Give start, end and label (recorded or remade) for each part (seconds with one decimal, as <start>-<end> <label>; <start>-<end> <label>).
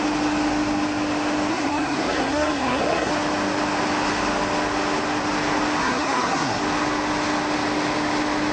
0.0-1.5 recorded; 1.5-3.1 remade; 3.1-5.8 recorded; 5.8-6.6 remade; 6.6-8.5 recorded